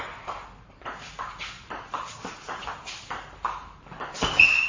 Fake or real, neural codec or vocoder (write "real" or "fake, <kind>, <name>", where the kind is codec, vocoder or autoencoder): real